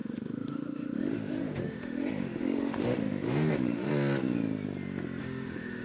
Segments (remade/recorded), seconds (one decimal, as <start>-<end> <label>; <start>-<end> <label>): 0.0-3.9 remade; 3.9-5.2 recorded; 5.2-5.8 remade